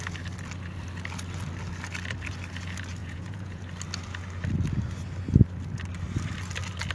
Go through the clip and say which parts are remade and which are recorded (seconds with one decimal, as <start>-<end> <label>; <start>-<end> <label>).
0.0-3.0 recorded; 3.0-3.6 remade; 3.6-6.9 recorded